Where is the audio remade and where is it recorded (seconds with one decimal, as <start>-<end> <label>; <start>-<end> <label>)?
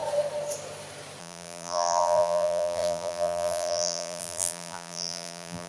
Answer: 0.0-1.2 recorded; 1.2-5.7 remade